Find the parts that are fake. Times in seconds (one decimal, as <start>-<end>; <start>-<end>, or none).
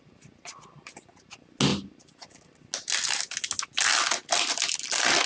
none